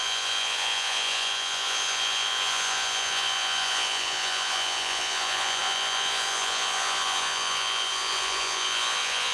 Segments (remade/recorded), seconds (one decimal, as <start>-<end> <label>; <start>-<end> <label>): 0.0-9.3 remade